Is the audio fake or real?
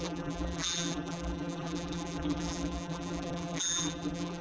fake